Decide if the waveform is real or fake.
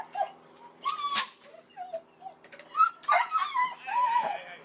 real